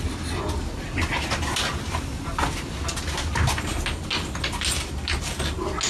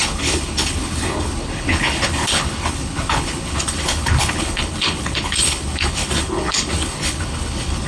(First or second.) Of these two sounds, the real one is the first